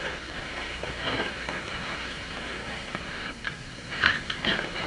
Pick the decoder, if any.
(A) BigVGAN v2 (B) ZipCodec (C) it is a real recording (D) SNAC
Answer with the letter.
D